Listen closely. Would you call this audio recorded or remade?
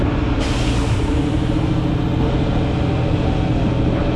recorded